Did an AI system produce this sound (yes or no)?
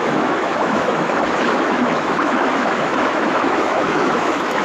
yes